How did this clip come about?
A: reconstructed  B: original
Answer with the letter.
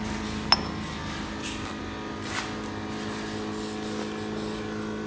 B